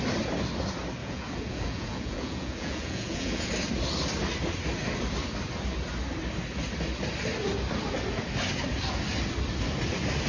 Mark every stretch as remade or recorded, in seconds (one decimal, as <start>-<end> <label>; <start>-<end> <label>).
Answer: 0.0-1.0 recorded; 1.0-3.5 remade; 3.5-10.3 recorded